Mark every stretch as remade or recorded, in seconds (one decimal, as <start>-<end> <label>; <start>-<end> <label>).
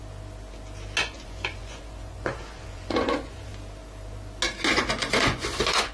0.0-1.0 recorded; 1.0-3.5 remade; 3.5-4.7 recorded; 4.7-5.9 remade